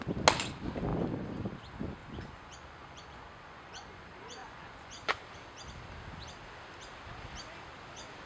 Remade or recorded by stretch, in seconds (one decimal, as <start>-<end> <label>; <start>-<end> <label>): 0.0-2.0 recorded; 2.0-4.0 remade; 4.0-4.4 recorded; 4.4-5.2 remade; 5.2-8.3 recorded